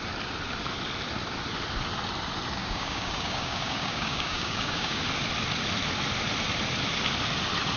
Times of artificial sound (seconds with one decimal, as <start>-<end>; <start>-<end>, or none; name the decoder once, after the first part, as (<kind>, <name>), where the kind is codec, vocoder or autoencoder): 2.6-5.0 (codec, DAC)